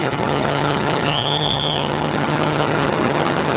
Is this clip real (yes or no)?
no